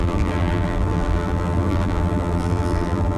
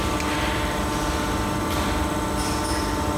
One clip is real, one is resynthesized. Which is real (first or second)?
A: second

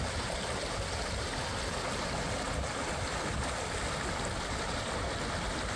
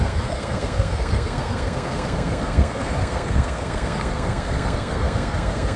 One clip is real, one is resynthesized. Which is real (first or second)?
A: first